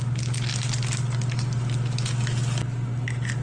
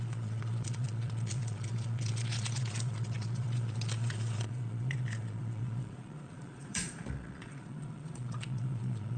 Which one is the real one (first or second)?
first